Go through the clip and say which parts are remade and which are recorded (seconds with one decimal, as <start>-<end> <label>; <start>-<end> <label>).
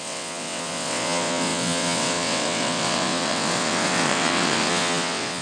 0.0-5.4 remade